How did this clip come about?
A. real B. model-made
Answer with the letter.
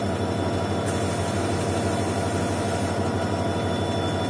A